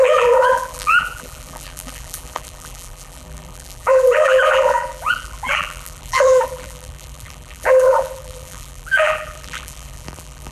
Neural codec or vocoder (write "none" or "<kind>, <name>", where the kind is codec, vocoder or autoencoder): vocoder, BigVGAN v2